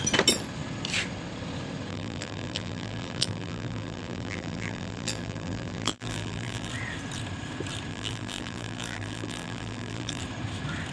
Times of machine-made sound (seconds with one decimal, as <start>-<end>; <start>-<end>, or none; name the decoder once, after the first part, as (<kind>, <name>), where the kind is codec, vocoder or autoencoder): 1.9-6.7 (vocoder, BigVGAN v2); 7.9-10.2